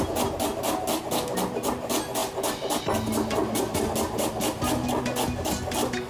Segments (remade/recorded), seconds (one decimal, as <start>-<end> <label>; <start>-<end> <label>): 0.0-6.1 recorded